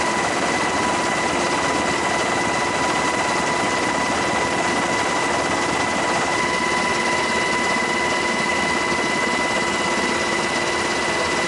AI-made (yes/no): no